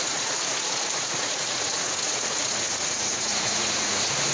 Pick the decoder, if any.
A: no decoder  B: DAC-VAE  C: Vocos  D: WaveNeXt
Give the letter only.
C